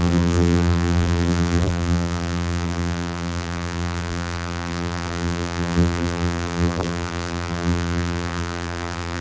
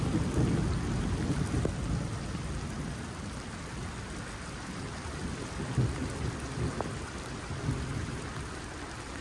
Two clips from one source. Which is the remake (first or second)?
first